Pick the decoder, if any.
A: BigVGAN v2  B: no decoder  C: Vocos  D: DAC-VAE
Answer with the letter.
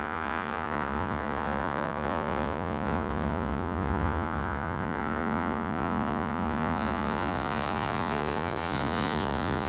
C